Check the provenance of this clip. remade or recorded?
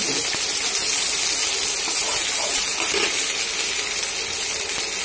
recorded